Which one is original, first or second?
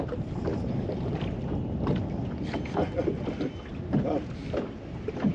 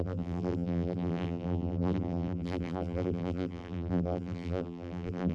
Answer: first